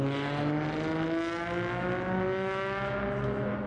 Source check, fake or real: real